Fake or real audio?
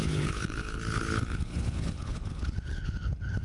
fake